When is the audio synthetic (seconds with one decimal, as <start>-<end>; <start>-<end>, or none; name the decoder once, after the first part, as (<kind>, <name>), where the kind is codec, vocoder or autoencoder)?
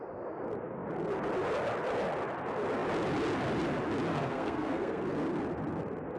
4.1-5.0 (codec, SNAC)